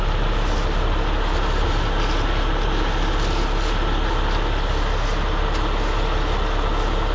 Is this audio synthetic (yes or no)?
no